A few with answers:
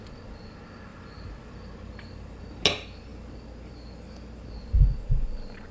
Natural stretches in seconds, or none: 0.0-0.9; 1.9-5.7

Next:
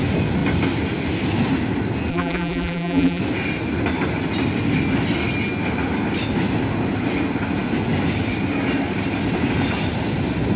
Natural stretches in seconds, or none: 0.0-2.1; 3.2-10.6

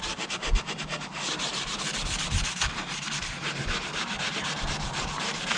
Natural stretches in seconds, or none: 0.8-1.5

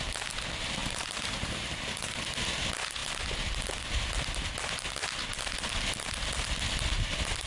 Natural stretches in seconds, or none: 0.0-0.8; 2.2-7.5

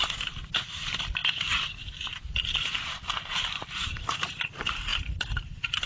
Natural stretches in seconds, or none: 0.0-4.9

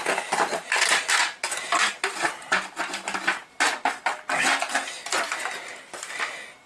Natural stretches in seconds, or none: 0.0-6.7

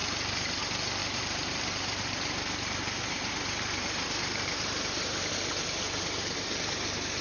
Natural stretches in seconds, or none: 0.6-1.0; 5.3-7.2

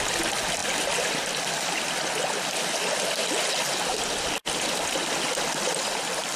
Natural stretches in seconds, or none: 0.0-0.6; 1.2-4.4; 5.0-6.4